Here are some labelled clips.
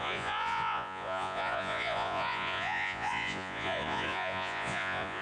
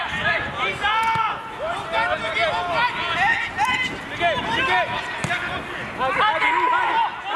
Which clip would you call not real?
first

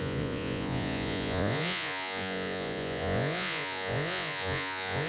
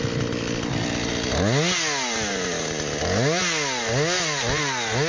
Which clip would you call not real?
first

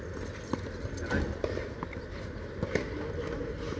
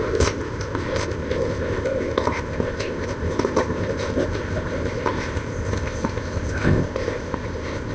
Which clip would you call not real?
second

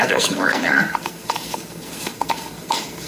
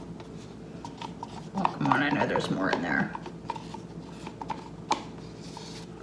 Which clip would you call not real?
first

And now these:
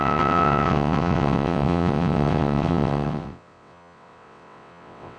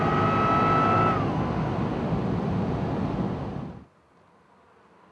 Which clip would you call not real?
first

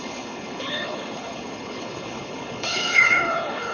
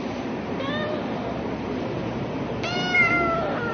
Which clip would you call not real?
first